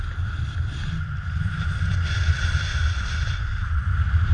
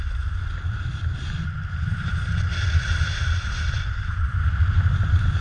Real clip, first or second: first